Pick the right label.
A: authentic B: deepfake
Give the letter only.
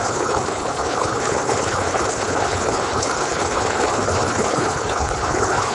B